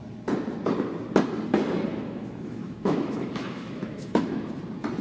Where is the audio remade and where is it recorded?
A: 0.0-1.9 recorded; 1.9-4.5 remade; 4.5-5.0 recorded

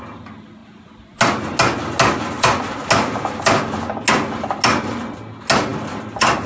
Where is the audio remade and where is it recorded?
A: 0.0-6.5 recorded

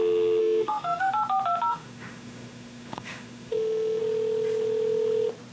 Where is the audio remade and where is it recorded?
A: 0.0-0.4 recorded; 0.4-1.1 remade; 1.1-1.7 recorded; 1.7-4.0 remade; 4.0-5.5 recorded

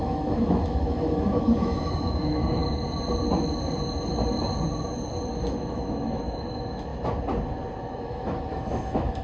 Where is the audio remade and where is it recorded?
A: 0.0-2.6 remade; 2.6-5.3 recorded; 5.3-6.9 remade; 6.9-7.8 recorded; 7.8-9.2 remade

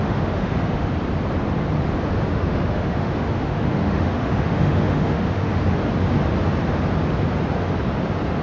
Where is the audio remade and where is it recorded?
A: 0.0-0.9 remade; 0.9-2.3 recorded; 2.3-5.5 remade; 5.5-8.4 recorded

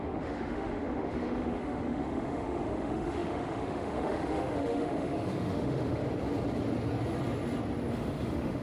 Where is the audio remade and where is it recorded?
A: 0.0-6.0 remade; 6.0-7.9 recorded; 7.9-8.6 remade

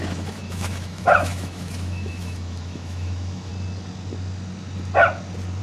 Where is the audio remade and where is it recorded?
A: 0.0-3.5 remade; 3.5-5.6 recorded